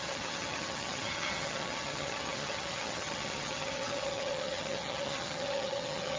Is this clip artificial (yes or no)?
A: yes